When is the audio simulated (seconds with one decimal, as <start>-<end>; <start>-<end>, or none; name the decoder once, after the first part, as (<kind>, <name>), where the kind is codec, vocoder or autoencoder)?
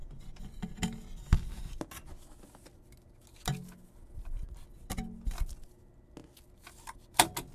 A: none